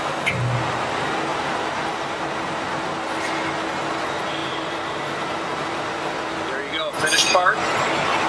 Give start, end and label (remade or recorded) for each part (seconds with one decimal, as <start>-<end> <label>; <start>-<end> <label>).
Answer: 0.0-1.3 recorded; 1.3-2.2 remade; 2.2-4.4 recorded; 4.4-6.3 remade; 6.3-8.3 recorded